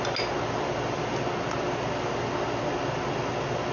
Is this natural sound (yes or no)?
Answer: yes